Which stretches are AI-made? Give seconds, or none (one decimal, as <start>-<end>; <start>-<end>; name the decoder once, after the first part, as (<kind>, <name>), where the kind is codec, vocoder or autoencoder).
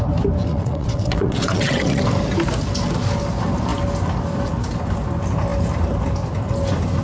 0.5-2.0 (vocoder, WaveNeXt)